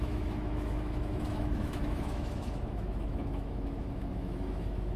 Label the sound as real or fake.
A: fake